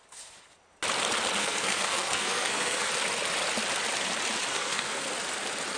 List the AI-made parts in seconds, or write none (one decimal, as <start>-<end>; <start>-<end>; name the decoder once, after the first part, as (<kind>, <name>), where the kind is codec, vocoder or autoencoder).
1.4-2.9 (codec, SNAC); 4.5-5.1